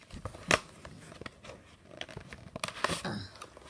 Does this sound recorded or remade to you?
recorded